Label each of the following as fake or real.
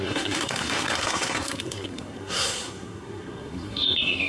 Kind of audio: fake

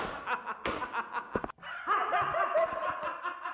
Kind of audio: real